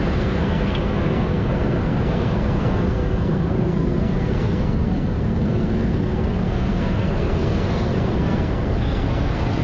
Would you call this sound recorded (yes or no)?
no